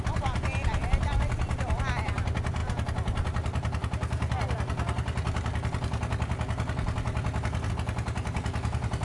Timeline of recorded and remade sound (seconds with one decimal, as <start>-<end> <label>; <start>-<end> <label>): 0.0-9.0 recorded